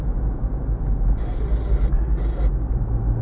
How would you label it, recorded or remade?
recorded